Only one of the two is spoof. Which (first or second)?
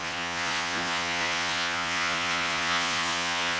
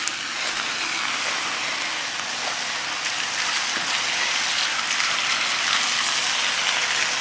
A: first